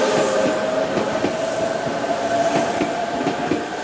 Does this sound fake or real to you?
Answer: real